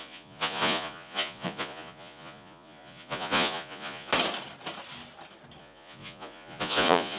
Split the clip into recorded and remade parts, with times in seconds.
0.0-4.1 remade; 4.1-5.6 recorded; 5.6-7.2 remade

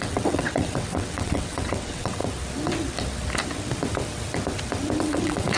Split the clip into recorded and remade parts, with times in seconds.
0.0-2.2 remade; 2.2-5.0 recorded; 5.0-5.6 remade